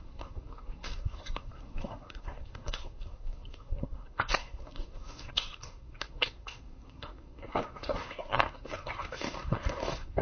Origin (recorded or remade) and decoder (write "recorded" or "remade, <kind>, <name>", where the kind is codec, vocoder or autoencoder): remade, codec, SNAC